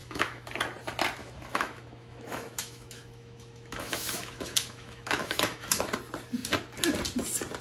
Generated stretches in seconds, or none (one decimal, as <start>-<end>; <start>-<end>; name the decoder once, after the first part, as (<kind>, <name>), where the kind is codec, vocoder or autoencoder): 0.0-0.5 (autoencoder, DAC-VAE); 1.2-5.8